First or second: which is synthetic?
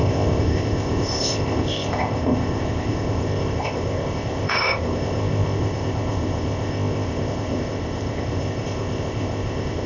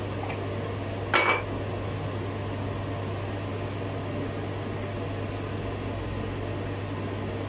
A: first